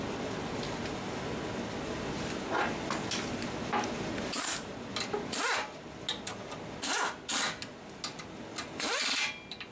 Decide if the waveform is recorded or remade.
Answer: recorded